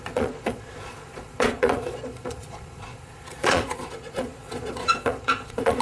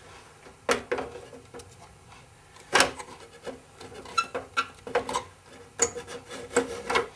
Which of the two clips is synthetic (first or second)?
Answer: first